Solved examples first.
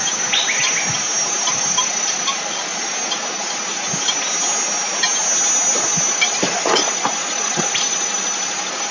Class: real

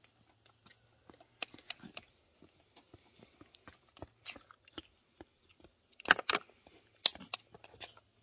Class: real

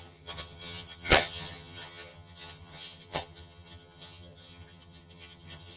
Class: fake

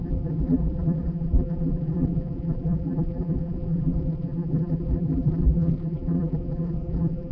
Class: fake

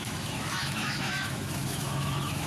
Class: fake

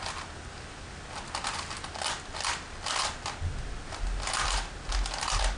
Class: real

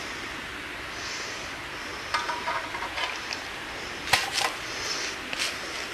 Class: real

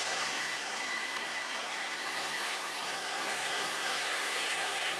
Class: fake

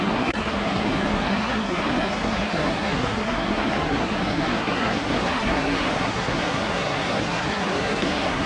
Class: fake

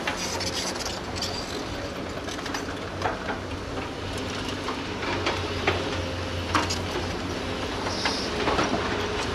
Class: real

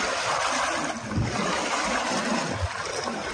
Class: real